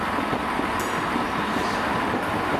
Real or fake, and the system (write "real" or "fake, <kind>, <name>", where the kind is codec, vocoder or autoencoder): real